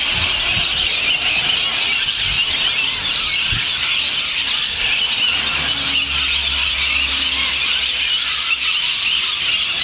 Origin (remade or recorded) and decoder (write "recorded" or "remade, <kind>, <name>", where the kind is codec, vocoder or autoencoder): recorded